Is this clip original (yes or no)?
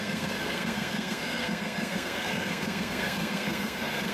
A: no